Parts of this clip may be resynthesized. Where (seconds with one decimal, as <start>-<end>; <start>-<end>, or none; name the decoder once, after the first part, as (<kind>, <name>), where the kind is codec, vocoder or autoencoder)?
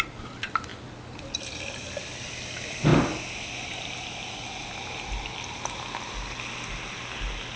none